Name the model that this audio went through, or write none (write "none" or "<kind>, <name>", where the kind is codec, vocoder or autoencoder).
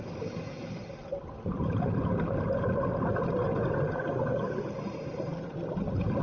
none